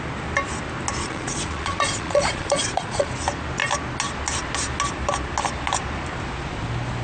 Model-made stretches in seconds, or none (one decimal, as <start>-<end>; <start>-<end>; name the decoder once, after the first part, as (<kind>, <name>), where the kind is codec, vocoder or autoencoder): 1.0-3.1 (vocoder, Vocos)

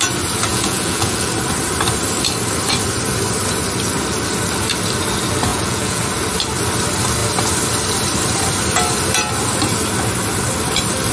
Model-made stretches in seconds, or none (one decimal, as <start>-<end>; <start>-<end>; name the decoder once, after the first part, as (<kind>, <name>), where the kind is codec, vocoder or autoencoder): 0.5-1.3 (vocoder, Vocos); 5.5-6.0

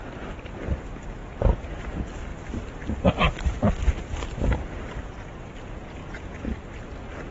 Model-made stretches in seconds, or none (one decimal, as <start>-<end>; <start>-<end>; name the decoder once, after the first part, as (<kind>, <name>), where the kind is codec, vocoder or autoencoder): 1.2-1.9 (vocoder, Vocos); 6.0-6.6

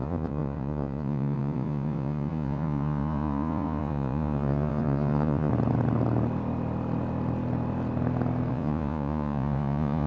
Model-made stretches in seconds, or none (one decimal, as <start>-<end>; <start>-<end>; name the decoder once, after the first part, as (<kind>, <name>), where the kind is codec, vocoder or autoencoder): 0.0-5.5 (vocoder, Vocos); 8.5-10.1

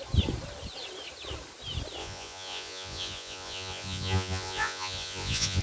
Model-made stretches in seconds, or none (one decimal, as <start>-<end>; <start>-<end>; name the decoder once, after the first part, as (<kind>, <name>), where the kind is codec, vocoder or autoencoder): 2.0-5.6 (vocoder, Vocos)

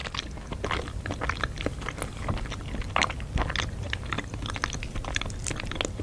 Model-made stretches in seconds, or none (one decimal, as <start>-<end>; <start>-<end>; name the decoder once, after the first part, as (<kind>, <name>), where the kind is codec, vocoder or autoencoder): none